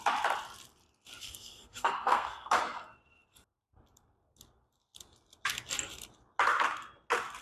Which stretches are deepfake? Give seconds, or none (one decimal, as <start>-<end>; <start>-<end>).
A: 1.2-2.6